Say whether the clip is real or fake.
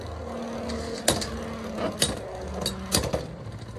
real